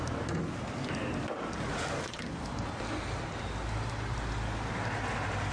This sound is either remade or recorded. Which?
recorded